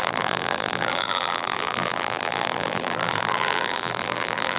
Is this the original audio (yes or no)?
no